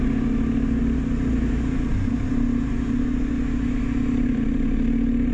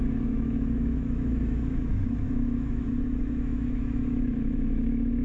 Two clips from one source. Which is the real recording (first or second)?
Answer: first